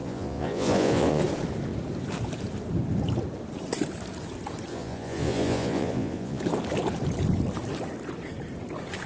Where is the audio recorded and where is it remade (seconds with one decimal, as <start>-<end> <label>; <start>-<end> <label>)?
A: 0.0-1.2 remade; 1.2-4.7 recorded; 4.7-6.4 remade; 6.4-9.1 recorded